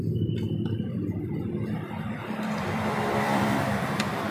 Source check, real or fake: fake